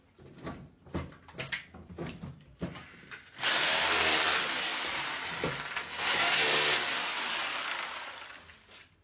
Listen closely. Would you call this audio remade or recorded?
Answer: recorded